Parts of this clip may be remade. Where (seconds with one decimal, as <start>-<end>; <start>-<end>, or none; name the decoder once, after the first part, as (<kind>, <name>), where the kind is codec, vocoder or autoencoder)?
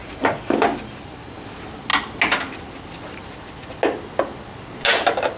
none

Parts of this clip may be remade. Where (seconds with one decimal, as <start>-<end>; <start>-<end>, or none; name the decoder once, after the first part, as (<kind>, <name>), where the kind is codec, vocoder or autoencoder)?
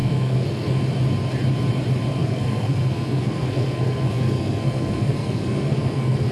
0.0-0.8 (codec, SNAC); 2.2-6.3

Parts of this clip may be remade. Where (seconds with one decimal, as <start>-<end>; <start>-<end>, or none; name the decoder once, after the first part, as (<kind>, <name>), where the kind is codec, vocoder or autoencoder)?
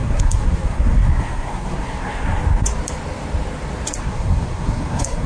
0.0-2.3 (codec, SNAC); 4.0-5.3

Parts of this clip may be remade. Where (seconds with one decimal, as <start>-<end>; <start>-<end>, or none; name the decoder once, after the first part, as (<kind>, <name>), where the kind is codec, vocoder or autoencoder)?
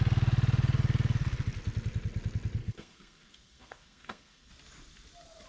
2.6-4.5 (codec, SNAC)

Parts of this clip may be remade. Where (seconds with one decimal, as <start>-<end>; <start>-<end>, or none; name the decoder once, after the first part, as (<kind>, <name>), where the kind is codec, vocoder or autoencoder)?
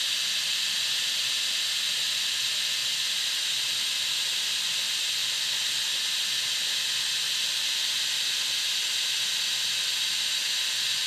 none